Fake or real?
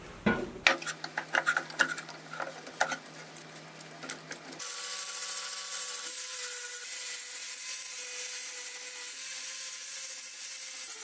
real